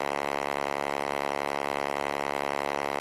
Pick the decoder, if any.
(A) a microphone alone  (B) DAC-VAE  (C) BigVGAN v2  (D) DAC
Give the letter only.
B